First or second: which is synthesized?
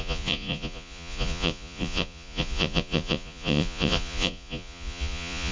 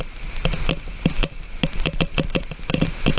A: first